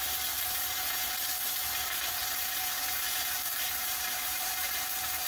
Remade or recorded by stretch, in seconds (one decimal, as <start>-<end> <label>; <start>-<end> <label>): 0.0-5.3 remade